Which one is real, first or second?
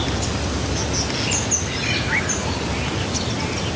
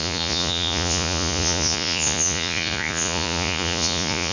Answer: first